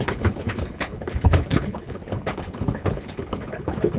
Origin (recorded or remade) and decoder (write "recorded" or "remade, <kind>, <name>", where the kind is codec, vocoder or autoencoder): remade, codec, HILCodec